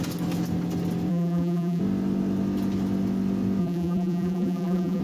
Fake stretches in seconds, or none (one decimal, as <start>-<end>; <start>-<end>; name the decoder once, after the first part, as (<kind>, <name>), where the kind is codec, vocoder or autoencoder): 1.1-1.8 (vocoder, BigVGAN v2); 3.6-5.0